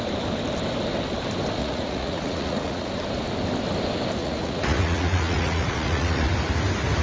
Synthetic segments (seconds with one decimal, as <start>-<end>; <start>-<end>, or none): 1.6-2.9; 4.2-6.3